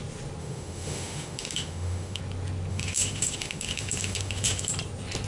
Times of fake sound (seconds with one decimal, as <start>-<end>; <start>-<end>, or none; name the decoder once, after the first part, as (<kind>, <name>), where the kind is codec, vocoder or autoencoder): 0.4-2.2 (autoencoder, DAC-VAE); 2.7-4.7